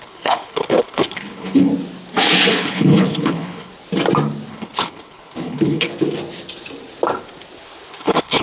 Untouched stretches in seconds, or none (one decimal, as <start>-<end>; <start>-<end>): 1.7-2.5; 3.7-4.5; 5.9-7.9